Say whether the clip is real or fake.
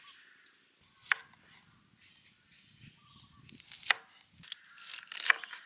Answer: real